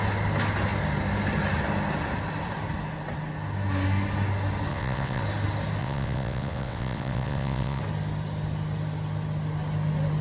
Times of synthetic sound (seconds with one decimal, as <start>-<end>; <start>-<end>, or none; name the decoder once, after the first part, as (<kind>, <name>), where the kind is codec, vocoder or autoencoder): 4.7-5.2 (vocoder, WaveNeXt); 5.8-7.8